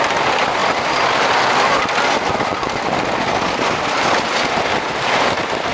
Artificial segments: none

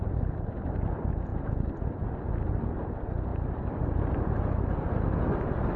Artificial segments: none

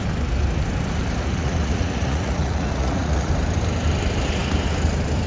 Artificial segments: 1.2-3.3 (vocoder, Vocos)

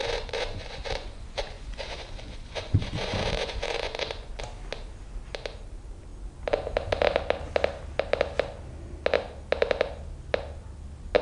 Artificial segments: 0.0-4.4 (vocoder, Vocos)